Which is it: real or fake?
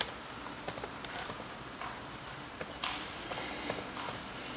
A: real